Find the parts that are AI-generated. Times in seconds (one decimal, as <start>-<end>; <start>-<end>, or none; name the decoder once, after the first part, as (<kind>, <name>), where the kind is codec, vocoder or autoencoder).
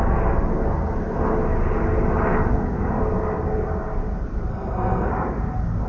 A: 4.5-5.1 (codec, SNAC)